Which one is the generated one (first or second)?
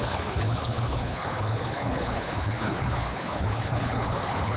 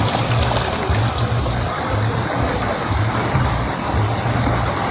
first